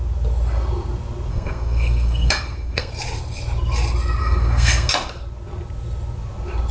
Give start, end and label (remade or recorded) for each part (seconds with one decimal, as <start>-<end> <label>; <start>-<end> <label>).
0.0-1.3 recorded; 1.3-2.9 remade; 2.9-4.2 recorded; 4.2-4.9 remade; 4.9-6.7 recorded

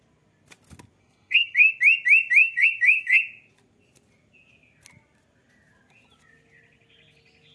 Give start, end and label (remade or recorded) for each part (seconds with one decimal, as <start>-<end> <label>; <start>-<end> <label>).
0.0-1.0 recorded; 1.0-1.7 remade; 1.7-2.4 recorded; 2.4-3.2 remade; 3.2-7.5 recorded

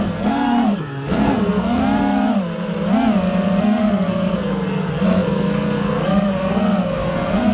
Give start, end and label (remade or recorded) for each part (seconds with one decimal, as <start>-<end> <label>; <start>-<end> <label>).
0.0-1.8 remade; 1.8-3.6 recorded; 3.6-7.5 remade

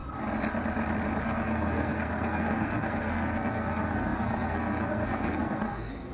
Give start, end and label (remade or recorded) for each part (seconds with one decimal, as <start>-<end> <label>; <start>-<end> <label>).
0.0-1.2 recorded; 1.2-6.1 remade

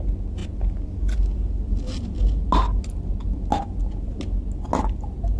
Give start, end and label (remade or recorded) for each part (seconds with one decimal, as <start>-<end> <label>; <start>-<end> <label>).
0.0-5.4 recorded

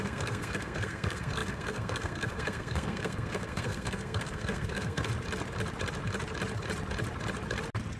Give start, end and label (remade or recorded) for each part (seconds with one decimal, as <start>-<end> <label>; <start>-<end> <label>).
0.0-5.1 remade; 5.1-8.0 recorded